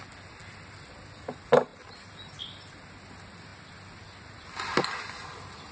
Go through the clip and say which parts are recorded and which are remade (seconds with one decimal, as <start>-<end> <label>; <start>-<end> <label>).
0.0-5.7 recorded